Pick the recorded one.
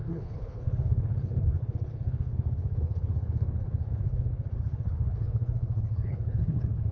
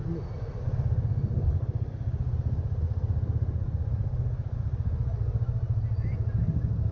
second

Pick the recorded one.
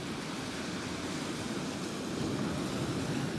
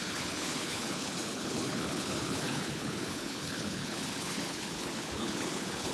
first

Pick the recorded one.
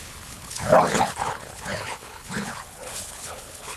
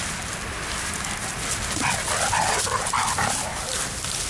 second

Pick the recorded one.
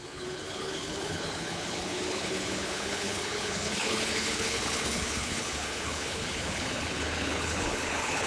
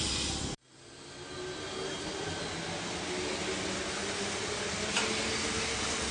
second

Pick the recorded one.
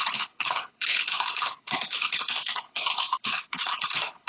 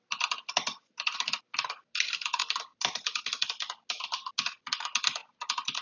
second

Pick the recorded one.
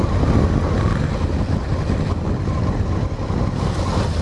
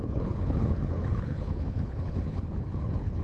first